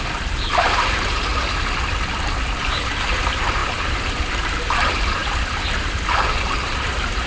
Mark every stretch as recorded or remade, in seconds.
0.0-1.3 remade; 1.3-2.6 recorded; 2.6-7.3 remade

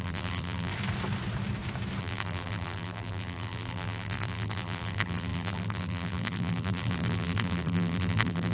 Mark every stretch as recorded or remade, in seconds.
0.0-0.7 remade; 0.7-2.0 recorded; 2.0-8.5 remade

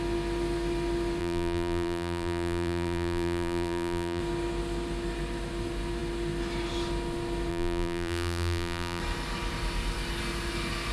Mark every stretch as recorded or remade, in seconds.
0.0-1.2 recorded; 1.2-4.2 remade; 4.2-7.5 recorded; 7.5-9.0 remade; 9.0-10.9 recorded

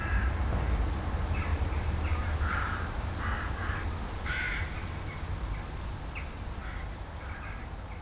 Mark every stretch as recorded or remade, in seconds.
0.0-1.5 recorded; 1.5-3.2 remade; 3.2-3.6 recorded; 3.6-4.6 remade; 4.6-8.0 recorded

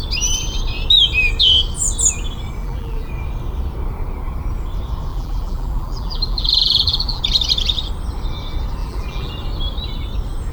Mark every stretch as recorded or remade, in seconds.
0.0-2.6 recorded; 2.6-3.1 remade; 3.1-5.1 recorded; 5.1-7.2 remade; 7.2-8.8 recorded; 8.8-9.3 remade; 9.3-10.5 recorded